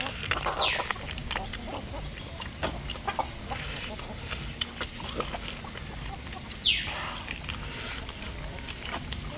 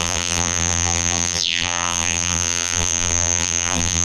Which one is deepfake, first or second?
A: second